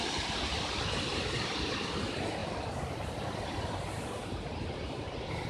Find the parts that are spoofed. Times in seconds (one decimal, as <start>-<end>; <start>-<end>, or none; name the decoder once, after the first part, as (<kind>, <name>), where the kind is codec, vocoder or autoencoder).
2.4-3.5 (vocoder, BigVGAN v2); 4.2-5.5